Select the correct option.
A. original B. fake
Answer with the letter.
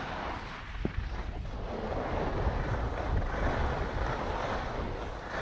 A